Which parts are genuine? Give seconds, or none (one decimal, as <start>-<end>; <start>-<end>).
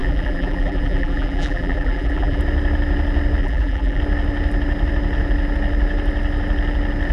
2.4-3.4; 4.0-7.1